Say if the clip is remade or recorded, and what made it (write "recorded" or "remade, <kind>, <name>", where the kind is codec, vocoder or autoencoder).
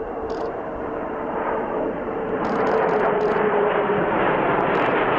remade, vocoder, BigVGAN v2